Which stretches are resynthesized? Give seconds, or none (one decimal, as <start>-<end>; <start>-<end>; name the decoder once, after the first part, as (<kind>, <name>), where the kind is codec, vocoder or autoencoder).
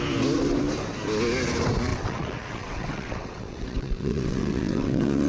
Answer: 1.9-5.3 (vocoder, WaveNeXt)